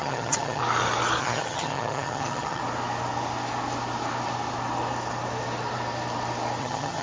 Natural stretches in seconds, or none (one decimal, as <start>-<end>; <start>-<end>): 0.6-1.2; 2.6-6.6